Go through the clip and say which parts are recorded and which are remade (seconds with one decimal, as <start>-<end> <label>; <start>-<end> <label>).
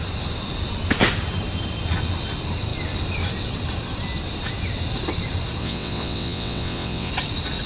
0.0-5.6 recorded; 5.6-7.1 remade; 7.1-7.7 recorded